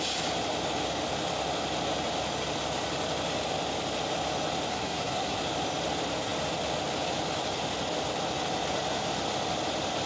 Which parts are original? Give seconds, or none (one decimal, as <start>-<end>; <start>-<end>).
0.0-4.7; 5.4-10.1

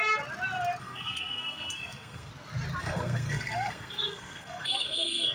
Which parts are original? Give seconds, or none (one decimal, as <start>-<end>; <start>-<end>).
0.0-0.8; 2.3-2.8

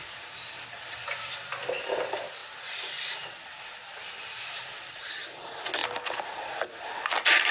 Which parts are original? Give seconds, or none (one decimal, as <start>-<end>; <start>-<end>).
0.0-7.5

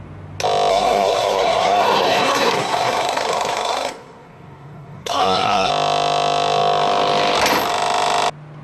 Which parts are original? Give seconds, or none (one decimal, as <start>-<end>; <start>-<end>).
0.0-0.7; 5.7-8.6

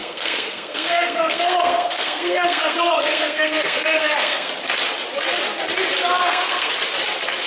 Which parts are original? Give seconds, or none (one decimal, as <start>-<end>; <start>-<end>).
4.5-6.2; 6.7-7.5

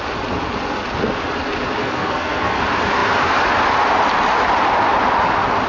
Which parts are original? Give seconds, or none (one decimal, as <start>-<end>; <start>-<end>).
0.0-1.8; 2.6-5.7

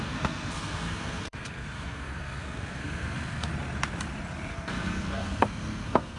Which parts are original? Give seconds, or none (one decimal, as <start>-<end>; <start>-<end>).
3.5-4.5